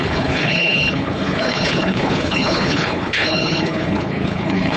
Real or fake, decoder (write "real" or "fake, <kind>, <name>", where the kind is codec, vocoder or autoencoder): fake, codec, HILCodec